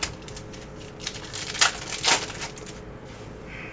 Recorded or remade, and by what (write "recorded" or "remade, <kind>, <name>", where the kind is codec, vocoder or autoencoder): recorded